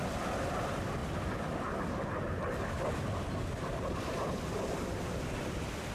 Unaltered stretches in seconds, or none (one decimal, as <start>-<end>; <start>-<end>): 0.0-1.0; 1.6-5.9